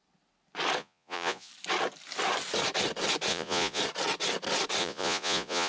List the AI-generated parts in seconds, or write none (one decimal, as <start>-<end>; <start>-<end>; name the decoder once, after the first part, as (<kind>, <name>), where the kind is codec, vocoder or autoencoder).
0.8-1.5 (vocoder, Vocos); 3.3-3.8; 4.8-5.7